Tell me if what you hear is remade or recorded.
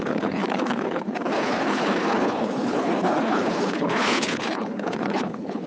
remade